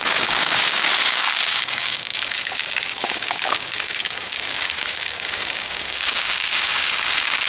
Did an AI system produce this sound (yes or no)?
yes